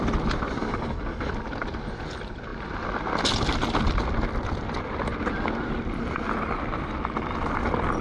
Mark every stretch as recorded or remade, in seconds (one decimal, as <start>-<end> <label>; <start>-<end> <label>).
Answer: 0.0-0.6 recorded; 0.6-1.3 remade; 1.3-8.0 recorded